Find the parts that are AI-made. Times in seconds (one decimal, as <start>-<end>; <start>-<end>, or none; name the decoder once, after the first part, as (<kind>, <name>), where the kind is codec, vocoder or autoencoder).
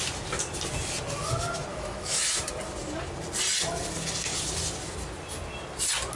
1.7-2.5 (autoencoder, DAC-VAE)